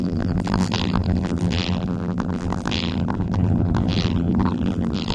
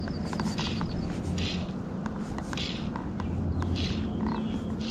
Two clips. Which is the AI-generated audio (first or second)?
first